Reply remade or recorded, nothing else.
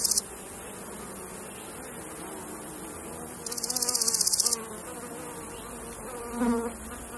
recorded